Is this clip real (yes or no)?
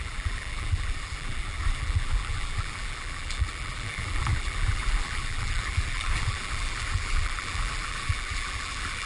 no